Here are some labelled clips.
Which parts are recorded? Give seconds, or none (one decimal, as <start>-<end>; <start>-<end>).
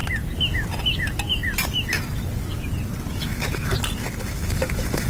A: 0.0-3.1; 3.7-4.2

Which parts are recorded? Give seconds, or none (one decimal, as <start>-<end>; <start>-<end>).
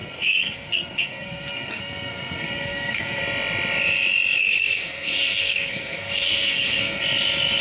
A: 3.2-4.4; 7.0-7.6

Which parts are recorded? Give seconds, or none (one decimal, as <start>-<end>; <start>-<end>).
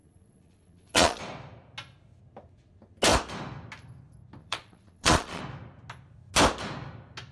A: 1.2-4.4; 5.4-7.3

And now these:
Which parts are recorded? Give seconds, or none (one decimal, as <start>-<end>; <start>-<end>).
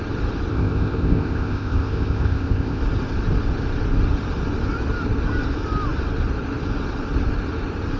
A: 0.0-0.5; 2.8-8.0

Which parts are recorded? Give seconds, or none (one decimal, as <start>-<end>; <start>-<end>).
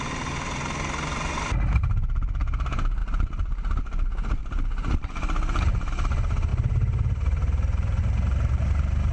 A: 0.0-3.0; 3.8-6.5; 8.0-9.1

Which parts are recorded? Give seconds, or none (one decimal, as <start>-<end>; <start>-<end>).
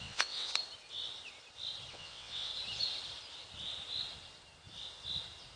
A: 0.5-1.9; 2.5-5.6